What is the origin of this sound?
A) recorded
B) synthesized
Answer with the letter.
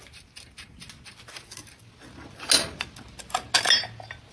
A